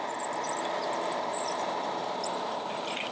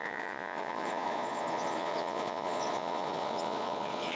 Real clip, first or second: first